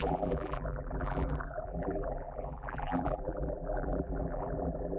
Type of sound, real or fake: fake